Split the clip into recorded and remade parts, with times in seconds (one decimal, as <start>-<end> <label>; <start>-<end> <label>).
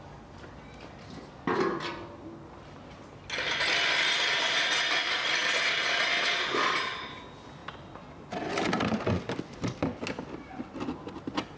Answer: 0.0-11.6 recorded